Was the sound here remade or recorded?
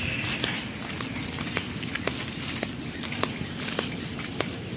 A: recorded